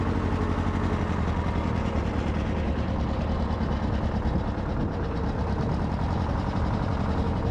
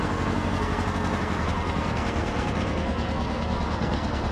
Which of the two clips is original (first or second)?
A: first